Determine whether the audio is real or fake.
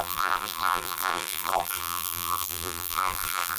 fake